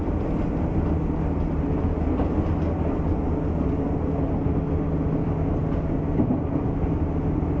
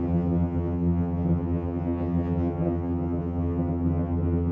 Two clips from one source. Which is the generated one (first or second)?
second